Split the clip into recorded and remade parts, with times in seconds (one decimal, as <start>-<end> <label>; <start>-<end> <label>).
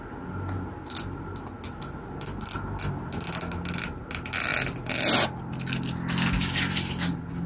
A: 0.0-7.5 recorded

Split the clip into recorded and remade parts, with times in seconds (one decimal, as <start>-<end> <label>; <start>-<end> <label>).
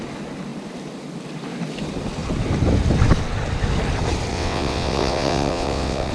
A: 0.0-4.3 recorded; 4.3-6.1 remade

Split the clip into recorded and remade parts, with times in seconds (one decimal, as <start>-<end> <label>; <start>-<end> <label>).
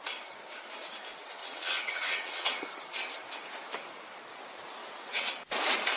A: 0.0-1.4 recorded; 1.4-2.7 remade; 2.7-4.8 recorded; 4.8-5.3 remade; 5.3-6.0 recorded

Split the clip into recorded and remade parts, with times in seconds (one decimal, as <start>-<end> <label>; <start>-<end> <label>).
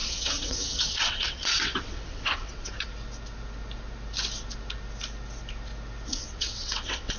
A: 0.0-2.9 remade; 2.9-6.1 recorded; 6.1-7.2 remade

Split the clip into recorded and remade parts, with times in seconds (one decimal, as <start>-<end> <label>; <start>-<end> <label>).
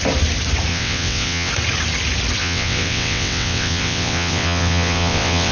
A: 0.0-0.7 recorded; 0.7-1.5 remade; 1.5-2.4 recorded; 2.4-5.5 remade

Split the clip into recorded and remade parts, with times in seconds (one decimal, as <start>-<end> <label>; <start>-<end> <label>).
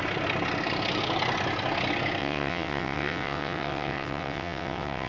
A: 0.0-2.2 recorded; 2.2-5.1 remade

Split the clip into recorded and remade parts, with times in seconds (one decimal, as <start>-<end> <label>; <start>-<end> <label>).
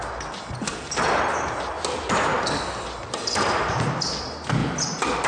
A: 0.0-5.3 recorded